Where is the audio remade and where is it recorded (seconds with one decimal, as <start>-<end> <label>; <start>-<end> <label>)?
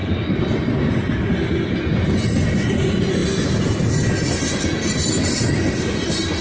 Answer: 0.0-6.4 recorded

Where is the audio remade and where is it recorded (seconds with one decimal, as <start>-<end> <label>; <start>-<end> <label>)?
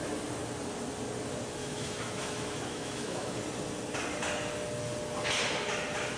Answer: 0.0-1.6 recorded; 1.6-3.4 remade; 3.4-6.2 recorded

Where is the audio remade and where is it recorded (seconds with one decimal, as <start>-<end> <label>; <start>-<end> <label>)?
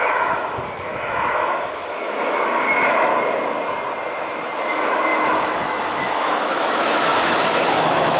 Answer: 0.0-3.1 remade; 3.1-4.6 recorded; 4.6-8.2 remade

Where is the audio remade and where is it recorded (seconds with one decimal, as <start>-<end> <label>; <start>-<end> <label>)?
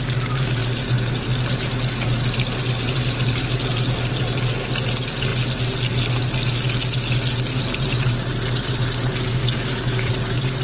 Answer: 0.0-9.4 recorded; 9.4-10.1 remade; 10.1-10.6 recorded